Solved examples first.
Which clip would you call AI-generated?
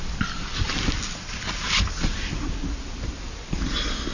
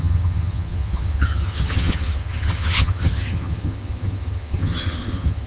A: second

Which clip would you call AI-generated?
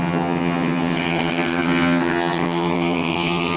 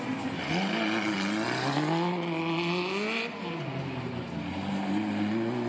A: first